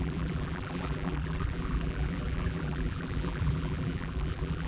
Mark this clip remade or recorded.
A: remade